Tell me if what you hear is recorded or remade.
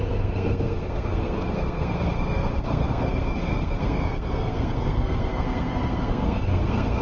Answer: remade